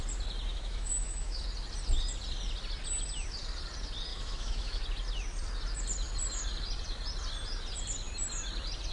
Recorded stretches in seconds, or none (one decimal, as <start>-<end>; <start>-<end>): 0.0-0.5; 1.4-4.1; 4.8-8.9